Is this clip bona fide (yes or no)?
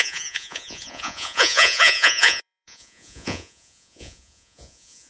no